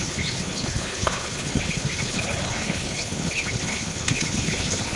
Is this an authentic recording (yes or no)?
no